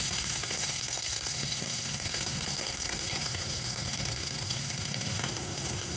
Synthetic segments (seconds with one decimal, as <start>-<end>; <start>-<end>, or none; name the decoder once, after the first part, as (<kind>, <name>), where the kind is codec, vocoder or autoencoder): 0.0-6.0 (codec, SNAC)